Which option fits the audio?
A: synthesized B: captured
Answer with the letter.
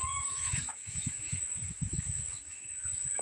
A